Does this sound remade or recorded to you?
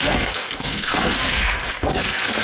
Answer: remade